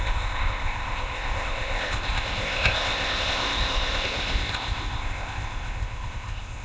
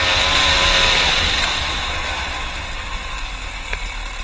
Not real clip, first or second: first